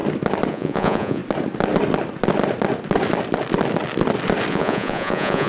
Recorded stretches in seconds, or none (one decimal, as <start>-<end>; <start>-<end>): 0.0-0.5; 1.2-4.5

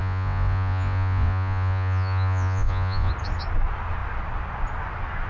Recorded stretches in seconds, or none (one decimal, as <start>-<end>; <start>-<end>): 3.1-5.3

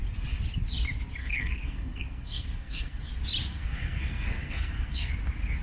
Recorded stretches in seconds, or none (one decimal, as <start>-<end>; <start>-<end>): 0.0-1.2; 3.1-3.5; 5.1-5.6

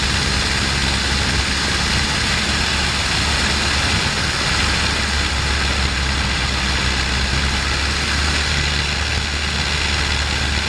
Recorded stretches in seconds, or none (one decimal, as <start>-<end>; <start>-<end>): 0.0-10.7

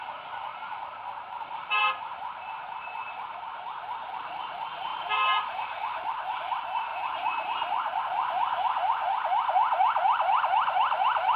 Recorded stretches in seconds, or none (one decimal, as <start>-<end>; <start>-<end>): 0.0-0.5; 1.4-6.9; 8.0-11.4

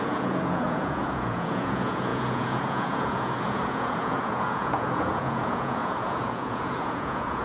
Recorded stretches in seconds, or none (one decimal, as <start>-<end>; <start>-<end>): none

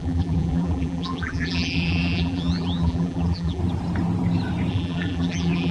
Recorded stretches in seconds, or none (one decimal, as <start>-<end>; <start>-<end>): 3.6-4.7